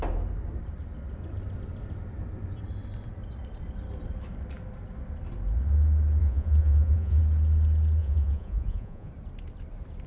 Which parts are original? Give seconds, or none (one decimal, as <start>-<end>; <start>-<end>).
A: 0.0-6.2; 7.2-8.0; 9.1-10.1

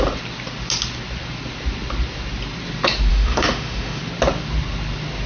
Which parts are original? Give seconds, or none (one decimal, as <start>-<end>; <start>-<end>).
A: 0.0-3.1; 4.0-5.3

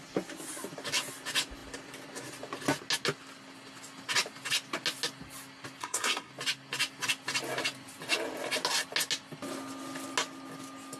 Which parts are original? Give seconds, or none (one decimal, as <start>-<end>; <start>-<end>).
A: 0.0-5.8; 6.3-11.0

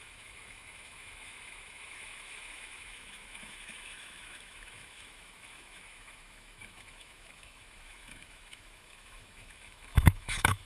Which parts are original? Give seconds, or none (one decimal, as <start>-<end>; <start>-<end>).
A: none

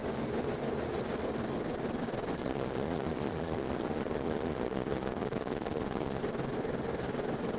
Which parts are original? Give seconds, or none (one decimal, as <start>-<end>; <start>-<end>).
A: 0.0-2.4; 6.2-7.6

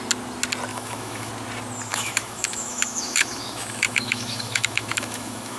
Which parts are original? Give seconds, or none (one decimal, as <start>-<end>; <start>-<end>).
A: 0.0-0.7; 1.3-1.9

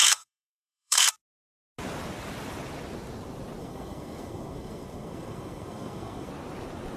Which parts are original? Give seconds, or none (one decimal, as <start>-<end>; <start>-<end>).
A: 1.1-3.6; 6.3-7.0

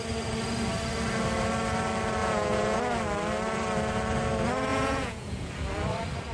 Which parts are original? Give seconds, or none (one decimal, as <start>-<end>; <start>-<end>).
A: 0.0-2.2; 2.8-4.7; 5.5-6.3